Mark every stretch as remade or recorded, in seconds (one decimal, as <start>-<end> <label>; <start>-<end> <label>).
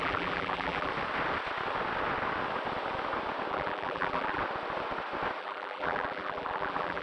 0.0-0.9 remade; 0.9-3.5 recorded; 3.5-4.4 remade; 4.4-5.4 recorded; 5.4-7.0 remade